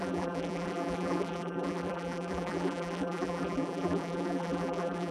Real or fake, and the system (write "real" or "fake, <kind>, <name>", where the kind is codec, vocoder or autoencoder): fake, vocoder, BigVGAN v2